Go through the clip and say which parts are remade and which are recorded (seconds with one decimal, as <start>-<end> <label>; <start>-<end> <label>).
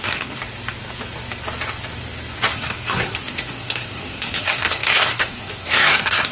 0.0-0.4 remade; 0.4-2.5 recorded; 2.5-6.3 remade